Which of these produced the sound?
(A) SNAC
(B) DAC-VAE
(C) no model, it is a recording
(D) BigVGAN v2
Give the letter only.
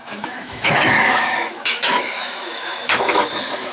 B